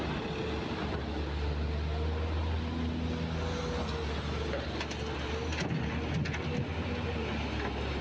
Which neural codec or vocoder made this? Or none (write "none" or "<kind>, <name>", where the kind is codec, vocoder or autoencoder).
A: none